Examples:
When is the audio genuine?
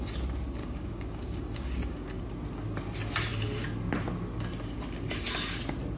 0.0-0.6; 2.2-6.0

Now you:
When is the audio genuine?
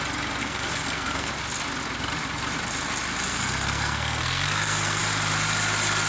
0.0-0.4; 1.3-3.3; 5.0-6.1